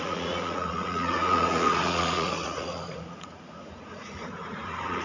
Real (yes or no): no